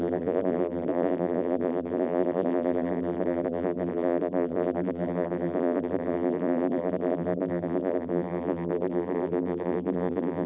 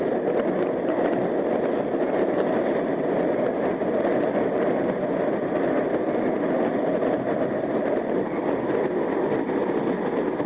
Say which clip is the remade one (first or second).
first